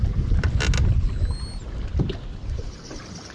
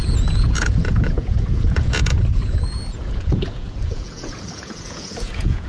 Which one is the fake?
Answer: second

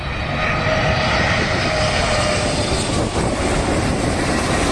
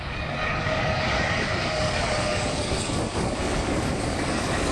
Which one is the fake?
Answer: second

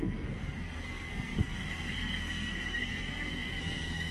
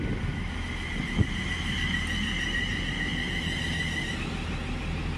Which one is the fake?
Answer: first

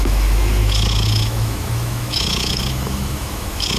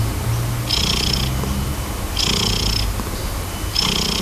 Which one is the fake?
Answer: first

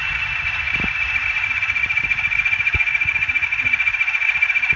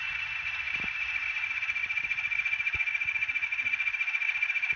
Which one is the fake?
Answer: first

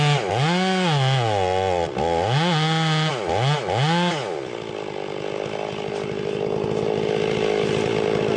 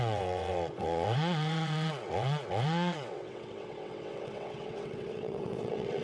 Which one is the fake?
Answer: second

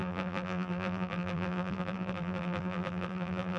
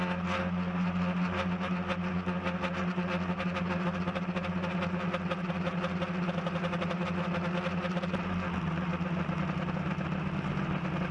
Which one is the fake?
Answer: first